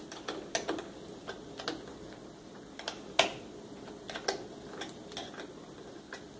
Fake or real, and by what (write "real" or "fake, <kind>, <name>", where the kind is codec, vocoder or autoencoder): real